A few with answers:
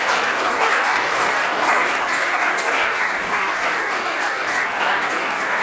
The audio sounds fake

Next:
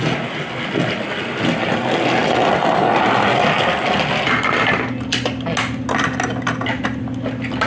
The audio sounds real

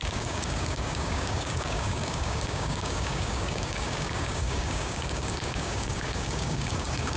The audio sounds fake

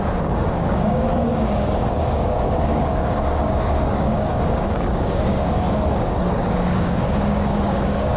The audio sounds fake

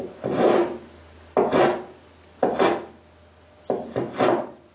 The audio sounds real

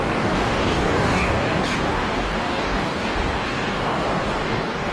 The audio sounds fake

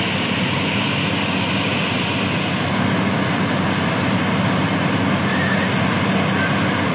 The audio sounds real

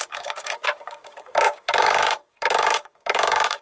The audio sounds fake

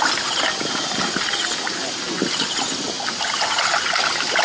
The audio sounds real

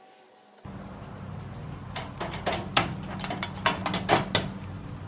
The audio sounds real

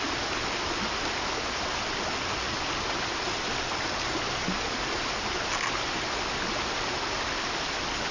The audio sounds real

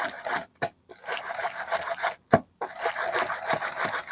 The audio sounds real